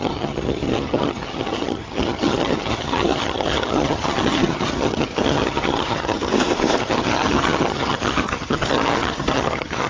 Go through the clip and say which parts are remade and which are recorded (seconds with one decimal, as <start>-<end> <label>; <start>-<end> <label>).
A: 0.0-6.3 remade; 6.3-6.8 recorded; 6.8-9.9 remade